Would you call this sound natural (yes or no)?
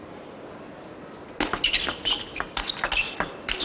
yes